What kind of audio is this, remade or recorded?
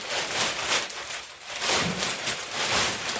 remade